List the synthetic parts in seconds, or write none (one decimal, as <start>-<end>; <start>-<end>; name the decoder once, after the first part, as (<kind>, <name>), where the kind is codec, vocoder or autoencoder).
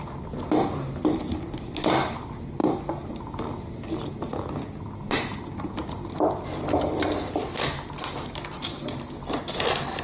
none